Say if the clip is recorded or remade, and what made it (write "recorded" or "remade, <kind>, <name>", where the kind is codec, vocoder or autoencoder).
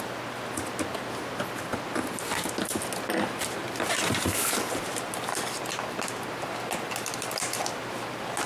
recorded